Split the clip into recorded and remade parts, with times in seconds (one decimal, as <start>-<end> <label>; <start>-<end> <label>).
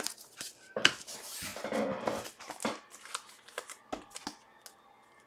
0.0-5.3 recorded